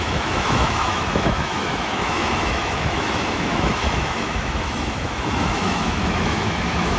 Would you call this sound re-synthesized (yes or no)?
yes